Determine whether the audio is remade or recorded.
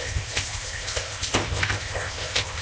remade